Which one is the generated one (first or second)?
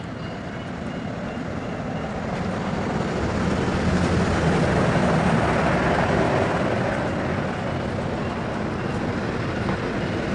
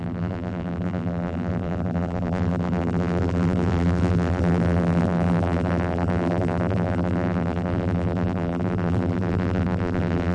second